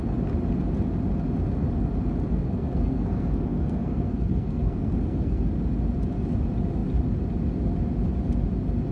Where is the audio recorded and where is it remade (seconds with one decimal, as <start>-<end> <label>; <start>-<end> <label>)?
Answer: 0.0-2.3 recorded; 2.3-5.5 remade; 5.5-8.9 recorded